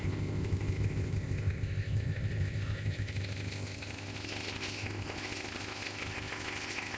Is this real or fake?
fake